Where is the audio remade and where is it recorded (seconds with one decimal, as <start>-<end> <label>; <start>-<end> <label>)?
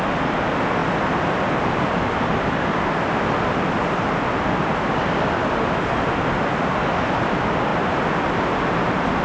0.0-9.2 recorded